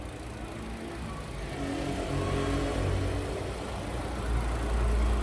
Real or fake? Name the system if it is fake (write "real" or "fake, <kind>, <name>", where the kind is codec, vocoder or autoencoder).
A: real